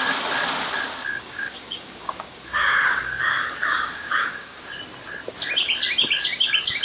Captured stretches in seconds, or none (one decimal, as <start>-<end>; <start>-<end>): 0.0-1.1; 4.7-6.8